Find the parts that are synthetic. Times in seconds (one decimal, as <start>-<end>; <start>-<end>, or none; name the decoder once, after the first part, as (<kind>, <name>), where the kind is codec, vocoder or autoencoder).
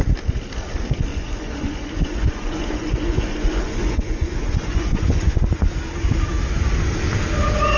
1.1-5.8 (vocoder, Vocos)